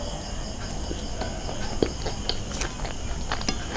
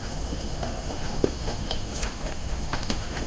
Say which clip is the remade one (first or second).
second